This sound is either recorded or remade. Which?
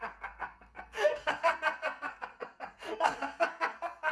remade